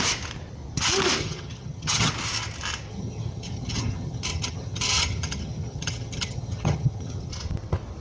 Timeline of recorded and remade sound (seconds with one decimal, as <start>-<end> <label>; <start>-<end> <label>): 0.0-1.2 recorded; 1.2-2.1 remade; 2.1-2.9 recorded; 2.9-7.3 remade; 7.3-8.0 recorded